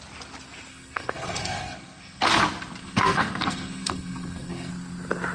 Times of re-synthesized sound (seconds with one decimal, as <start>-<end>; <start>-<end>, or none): 0.7-2.2; 2.8-4.7